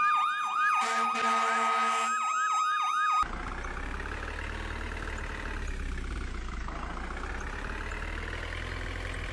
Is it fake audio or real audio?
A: real